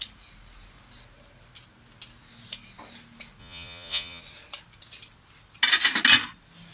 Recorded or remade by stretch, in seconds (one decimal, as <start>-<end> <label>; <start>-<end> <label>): 0.0-3.4 recorded; 3.4-4.2 remade; 4.2-6.7 recorded